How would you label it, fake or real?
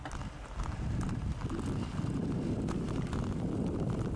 real